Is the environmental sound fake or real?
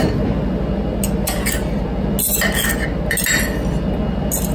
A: real